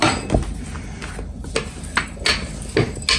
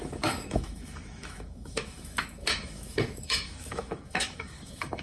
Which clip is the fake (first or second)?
second